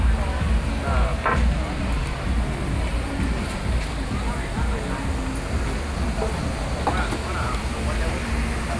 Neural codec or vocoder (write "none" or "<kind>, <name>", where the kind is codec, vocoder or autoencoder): none